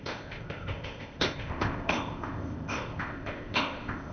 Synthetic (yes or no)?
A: yes